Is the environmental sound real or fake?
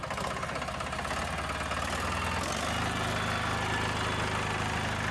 real